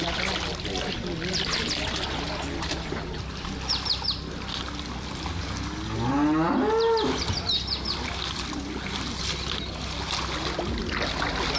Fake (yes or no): no